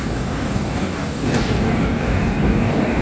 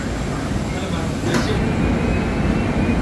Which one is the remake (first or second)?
first